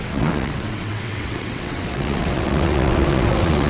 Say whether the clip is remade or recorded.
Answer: remade